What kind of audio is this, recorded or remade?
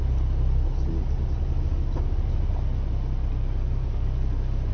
recorded